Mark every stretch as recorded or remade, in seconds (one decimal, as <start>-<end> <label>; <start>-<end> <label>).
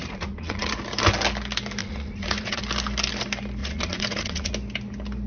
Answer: 0.0-0.7 remade; 0.7-1.8 recorded; 1.8-2.6 remade; 2.6-3.6 recorded; 3.6-4.5 remade; 4.5-5.3 recorded